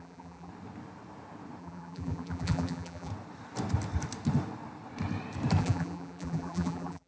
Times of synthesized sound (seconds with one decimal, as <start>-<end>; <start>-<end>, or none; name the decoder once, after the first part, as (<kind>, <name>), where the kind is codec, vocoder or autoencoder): 0.0-0.5 (vocoder, BigVGAN v2); 1.6-3.1; 5.6-7.1